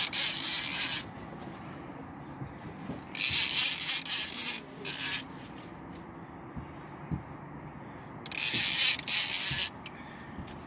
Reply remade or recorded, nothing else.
recorded